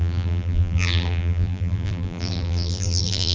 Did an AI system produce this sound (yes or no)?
yes